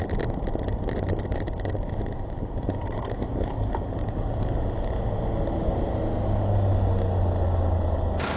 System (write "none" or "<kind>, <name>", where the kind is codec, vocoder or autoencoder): none